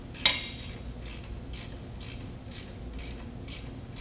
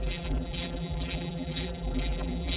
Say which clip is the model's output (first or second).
second